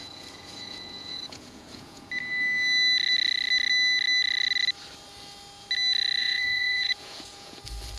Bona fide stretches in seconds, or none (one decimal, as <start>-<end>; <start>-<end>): 2.1-6.2; 7.6-8.0